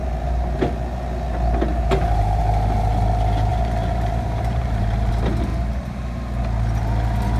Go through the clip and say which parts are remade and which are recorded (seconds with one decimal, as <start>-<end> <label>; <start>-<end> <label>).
0.0-0.6 remade; 0.6-1.7 recorded; 1.7-2.4 remade; 2.4-3.5 recorded; 3.5-5.1 remade; 5.1-5.5 recorded; 5.5-6.4 remade; 6.4-7.4 recorded